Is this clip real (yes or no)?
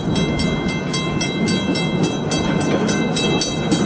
yes